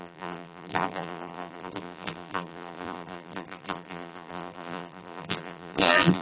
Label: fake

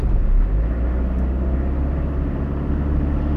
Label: real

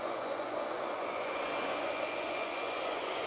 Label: fake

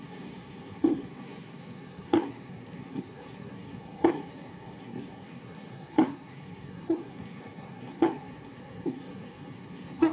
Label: fake